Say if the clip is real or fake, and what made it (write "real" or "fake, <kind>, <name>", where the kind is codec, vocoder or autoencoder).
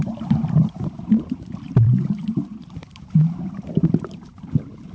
fake, vocoder, BigVGAN v2